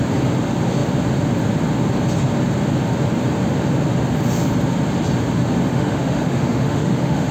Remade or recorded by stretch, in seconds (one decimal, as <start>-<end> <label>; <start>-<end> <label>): 0.0-5.7 recorded; 5.7-7.3 remade